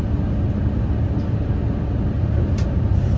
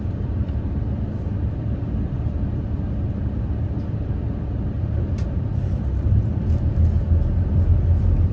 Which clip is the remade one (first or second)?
second